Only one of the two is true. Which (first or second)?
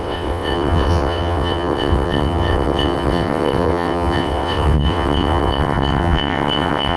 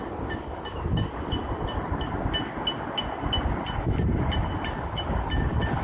second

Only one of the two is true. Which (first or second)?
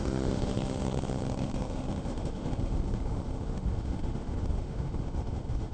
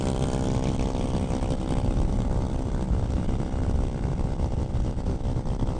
second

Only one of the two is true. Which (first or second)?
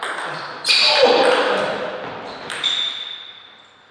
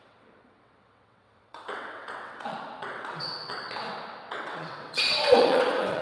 first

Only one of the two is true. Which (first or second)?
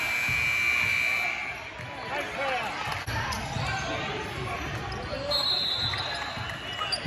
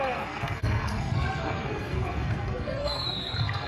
first